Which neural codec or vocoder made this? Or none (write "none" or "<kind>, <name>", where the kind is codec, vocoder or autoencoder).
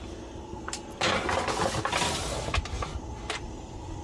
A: none